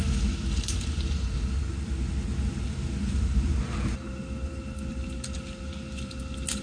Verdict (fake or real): real